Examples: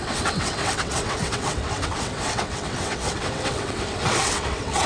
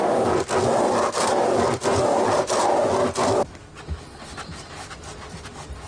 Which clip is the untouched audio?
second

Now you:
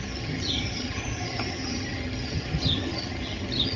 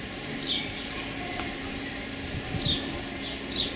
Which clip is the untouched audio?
second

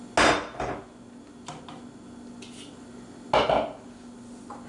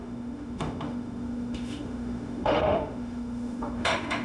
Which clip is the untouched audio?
first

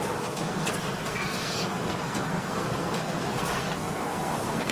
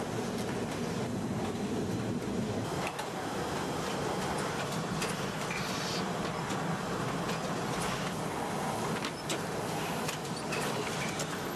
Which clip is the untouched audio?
second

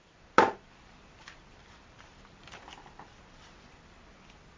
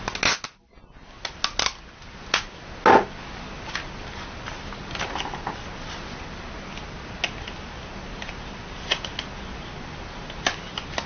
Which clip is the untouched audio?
second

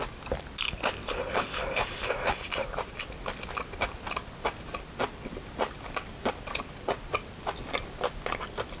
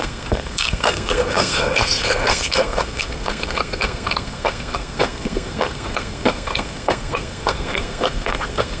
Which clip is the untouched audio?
first